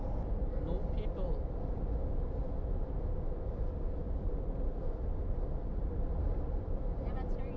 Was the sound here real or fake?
real